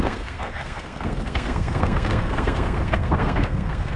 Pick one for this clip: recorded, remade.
remade